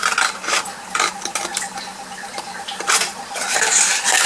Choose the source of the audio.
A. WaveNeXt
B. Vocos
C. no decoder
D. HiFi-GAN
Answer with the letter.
C